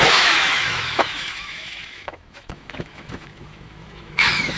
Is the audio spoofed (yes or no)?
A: yes